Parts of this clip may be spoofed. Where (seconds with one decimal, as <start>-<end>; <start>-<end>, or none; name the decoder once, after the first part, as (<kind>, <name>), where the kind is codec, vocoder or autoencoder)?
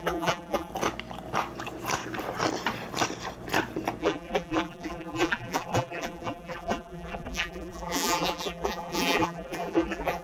0.0-0.7 (vocoder, BigVGAN v2); 4.0-10.2